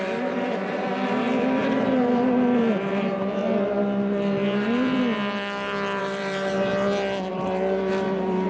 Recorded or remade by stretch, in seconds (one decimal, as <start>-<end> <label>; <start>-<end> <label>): 0.0-3.4 remade; 3.4-6.0 recorded; 6.0-6.7 remade; 6.7-7.3 recorded; 7.3-8.5 remade